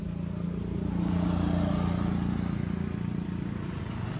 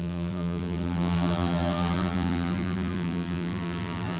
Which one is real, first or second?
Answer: first